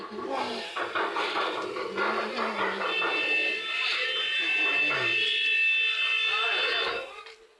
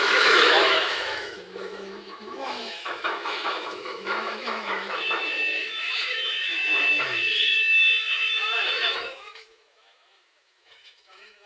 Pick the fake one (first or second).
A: second